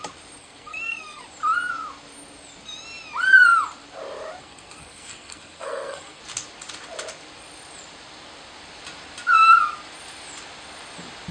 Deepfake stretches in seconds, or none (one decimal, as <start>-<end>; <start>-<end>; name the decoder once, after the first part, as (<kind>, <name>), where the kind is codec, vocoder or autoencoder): 0.4-1.2 (codec, SNAC); 4.4-6.2

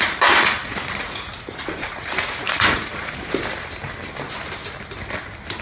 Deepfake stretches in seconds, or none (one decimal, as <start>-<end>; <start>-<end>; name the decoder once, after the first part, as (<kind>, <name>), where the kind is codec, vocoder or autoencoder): 0.6-3.3 (vocoder, Vocos)

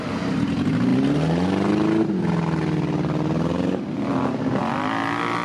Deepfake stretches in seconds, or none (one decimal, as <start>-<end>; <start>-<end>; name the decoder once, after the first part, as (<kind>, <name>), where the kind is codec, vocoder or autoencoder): none

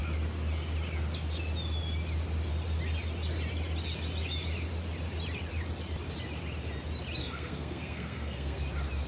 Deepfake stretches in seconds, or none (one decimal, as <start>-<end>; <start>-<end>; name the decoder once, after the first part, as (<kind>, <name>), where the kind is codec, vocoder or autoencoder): 7.2-8.6 (codec, SNAC)